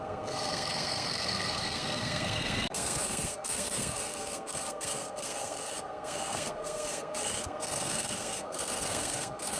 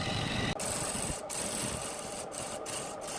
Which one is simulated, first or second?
first